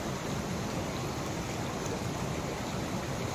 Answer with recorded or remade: recorded